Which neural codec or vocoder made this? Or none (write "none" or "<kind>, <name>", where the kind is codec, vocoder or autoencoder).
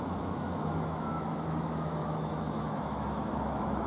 autoencoder, DAC-VAE